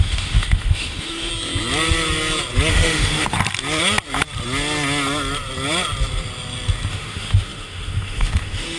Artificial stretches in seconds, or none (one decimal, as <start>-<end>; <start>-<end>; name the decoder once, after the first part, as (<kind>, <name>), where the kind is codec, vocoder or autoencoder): 0.0-1.3 (autoencoder, DAC-VAE); 2.7-3.4; 6.9-8.8